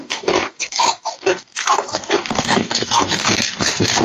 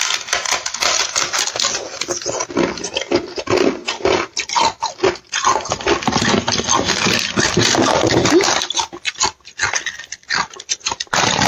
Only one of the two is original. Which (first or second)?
second